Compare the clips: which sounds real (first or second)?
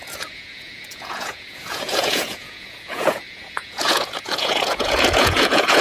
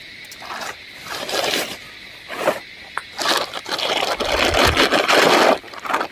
second